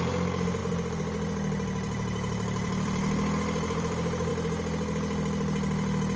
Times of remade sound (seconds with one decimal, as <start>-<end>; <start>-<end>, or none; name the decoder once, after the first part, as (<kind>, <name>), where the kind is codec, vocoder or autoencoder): 0.6-4.3 (vocoder, BigVGAN v2)